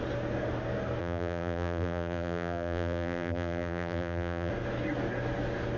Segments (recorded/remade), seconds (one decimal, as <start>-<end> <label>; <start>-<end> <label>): 0.0-1.0 recorded; 1.0-4.5 remade; 4.5-5.8 recorded